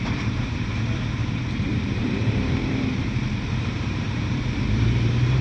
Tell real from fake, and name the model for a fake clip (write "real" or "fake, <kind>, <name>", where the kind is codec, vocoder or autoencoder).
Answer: fake, vocoder, BigVGAN v2